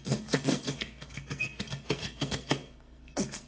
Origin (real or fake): fake